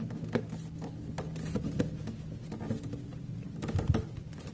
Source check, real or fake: real